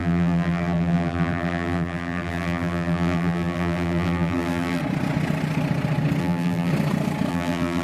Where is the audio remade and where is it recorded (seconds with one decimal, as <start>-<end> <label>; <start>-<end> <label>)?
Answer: 0.0-4.8 remade; 4.8-6.2 recorded; 6.2-6.7 remade; 6.7-7.3 recorded; 7.3-7.8 remade